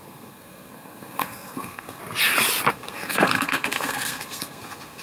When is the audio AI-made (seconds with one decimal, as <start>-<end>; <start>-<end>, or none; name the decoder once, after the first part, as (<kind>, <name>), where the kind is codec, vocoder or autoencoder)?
0.0-2.0 (codec, SNAC); 2.7-5.0